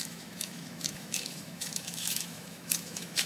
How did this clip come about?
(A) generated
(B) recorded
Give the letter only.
A